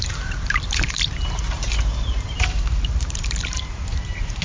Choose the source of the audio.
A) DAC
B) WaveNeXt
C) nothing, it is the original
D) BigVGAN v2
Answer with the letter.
D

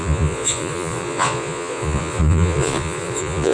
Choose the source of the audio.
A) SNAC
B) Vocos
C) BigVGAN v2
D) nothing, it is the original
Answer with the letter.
B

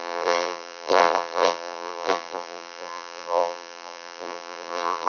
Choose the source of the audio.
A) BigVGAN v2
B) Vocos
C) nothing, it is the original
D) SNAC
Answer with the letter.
A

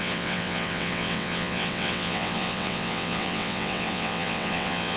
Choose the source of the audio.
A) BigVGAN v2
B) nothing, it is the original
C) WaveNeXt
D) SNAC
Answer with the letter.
C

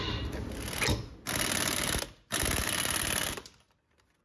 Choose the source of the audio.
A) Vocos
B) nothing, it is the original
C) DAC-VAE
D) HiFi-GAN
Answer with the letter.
B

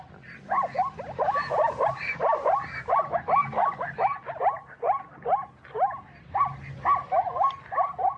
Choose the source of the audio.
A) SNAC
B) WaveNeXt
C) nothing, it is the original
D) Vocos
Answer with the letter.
C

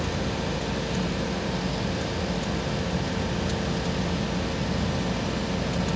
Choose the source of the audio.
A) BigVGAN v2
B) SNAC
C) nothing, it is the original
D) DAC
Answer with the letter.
C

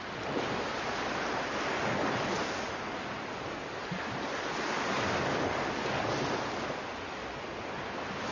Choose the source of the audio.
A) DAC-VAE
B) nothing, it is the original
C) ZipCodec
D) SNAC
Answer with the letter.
B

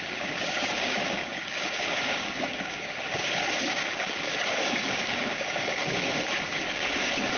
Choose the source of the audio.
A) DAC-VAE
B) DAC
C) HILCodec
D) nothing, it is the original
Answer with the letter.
B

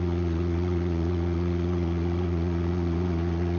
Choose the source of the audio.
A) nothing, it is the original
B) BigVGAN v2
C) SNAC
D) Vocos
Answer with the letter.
D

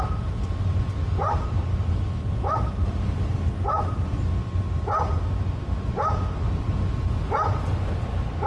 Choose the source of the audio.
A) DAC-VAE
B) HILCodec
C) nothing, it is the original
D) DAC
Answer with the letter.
C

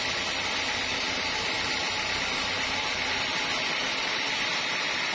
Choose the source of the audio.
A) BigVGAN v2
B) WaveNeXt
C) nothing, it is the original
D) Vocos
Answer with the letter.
C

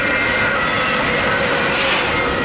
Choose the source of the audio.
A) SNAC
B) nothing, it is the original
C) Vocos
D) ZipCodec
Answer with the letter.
B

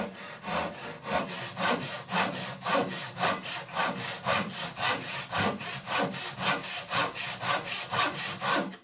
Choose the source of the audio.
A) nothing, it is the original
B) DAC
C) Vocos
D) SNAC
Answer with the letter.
A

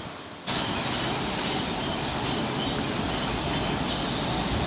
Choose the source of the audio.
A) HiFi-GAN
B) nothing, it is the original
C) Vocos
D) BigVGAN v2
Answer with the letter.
B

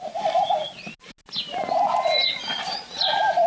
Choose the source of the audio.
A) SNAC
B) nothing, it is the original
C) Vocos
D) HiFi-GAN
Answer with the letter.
B